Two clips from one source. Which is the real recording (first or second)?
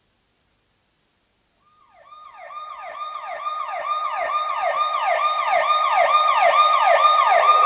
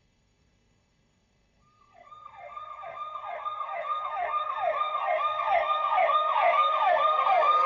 first